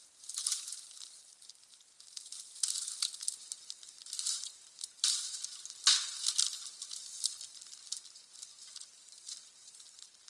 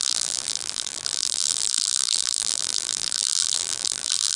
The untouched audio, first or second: first